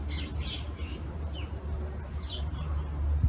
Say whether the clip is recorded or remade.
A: recorded